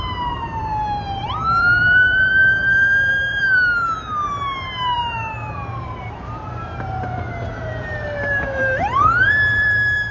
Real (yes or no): no